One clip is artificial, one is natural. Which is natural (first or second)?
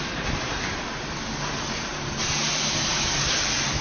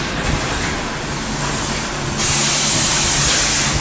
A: second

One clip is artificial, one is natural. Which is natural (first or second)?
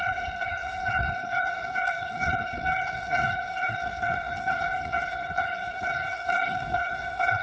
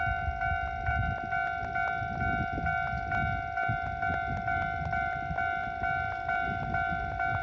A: second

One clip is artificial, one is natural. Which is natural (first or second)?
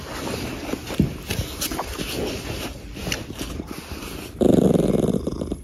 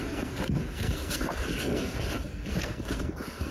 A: first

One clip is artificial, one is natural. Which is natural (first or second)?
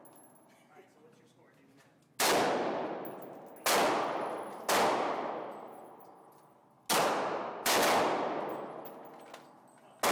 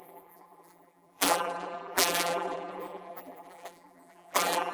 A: first